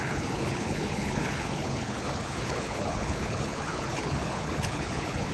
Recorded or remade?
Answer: remade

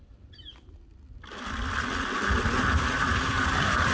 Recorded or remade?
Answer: recorded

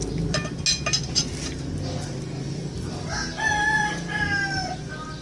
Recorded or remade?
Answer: recorded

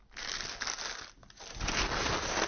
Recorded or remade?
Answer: recorded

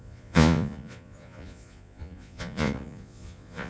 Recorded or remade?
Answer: remade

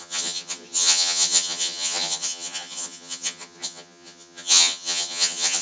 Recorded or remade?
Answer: remade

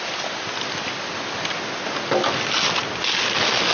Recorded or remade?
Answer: recorded